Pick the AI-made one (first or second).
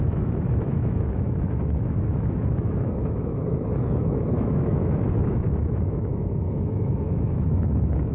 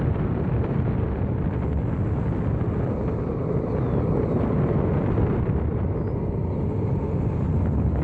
first